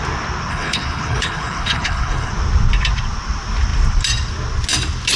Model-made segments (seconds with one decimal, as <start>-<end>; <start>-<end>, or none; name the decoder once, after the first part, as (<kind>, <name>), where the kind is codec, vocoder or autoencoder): 0.5-2.3 (codec, HILCodec)